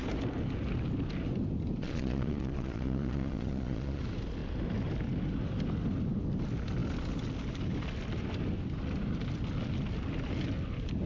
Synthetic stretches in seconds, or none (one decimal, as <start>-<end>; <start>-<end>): 1.8-4.0